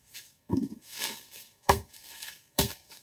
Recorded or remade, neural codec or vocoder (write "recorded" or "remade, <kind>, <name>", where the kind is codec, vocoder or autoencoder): remade, codec, SNAC